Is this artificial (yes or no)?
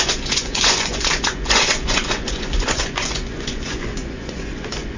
yes